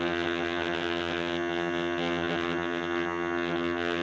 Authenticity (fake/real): fake